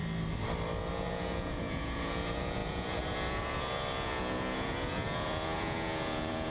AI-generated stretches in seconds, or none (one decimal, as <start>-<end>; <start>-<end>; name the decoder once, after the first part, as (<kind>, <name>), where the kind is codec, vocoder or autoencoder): 0.9-6.5 (vocoder, Vocos)